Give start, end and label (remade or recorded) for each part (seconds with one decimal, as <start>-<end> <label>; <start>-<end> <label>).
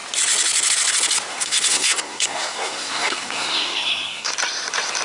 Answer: 0.0-1.3 recorded; 1.3-4.3 remade; 4.3-5.0 recorded